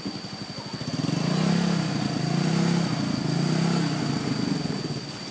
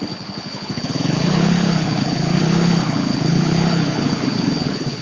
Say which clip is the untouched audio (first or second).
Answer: first